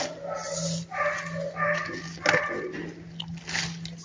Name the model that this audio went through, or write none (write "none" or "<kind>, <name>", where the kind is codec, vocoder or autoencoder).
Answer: none